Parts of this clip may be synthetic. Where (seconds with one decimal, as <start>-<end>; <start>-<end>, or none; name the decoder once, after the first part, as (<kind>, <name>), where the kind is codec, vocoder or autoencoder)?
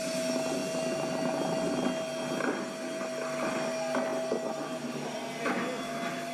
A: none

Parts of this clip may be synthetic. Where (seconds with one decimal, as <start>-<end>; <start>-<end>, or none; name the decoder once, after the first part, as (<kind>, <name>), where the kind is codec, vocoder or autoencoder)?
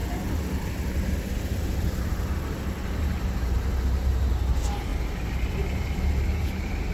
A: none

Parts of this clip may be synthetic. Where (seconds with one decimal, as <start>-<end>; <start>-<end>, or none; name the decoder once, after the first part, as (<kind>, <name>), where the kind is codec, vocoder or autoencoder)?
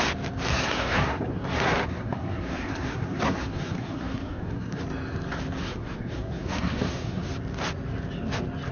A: 0.5-4.8 (codec, SNAC); 5.6-7.3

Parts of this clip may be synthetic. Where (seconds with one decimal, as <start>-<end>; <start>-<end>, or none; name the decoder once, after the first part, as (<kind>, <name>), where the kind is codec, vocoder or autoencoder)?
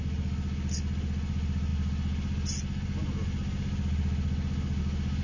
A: none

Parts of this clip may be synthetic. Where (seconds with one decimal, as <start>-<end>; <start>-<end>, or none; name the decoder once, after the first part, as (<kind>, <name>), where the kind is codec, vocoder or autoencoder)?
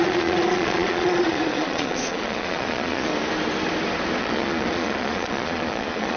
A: 0.0-3.1 (vocoder, Vocos); 4.2-6.2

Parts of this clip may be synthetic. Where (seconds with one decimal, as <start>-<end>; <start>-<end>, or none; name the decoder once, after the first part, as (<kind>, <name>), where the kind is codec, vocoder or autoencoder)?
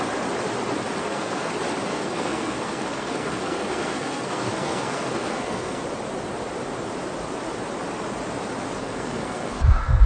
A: 1.0-1.5 (codec, SNAC); 1.9-5.8; 8.8-10.1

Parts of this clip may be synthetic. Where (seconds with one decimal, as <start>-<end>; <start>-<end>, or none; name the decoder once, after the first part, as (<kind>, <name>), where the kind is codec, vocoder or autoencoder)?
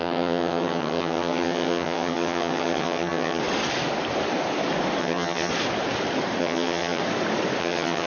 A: 0.0-3.4 (vocoder, HiFi-GAN); 5.0-5.5; 6.4-7.0; 7.6-8.1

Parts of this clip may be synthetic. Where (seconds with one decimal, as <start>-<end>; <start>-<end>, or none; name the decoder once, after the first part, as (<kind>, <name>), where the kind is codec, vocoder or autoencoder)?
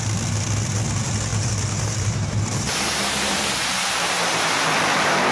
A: 1.3-4.5 (vocoder, BigVGAN v2)